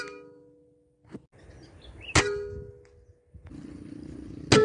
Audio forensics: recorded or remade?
recorded